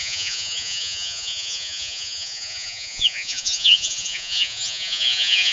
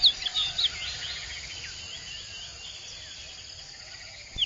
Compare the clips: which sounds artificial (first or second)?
first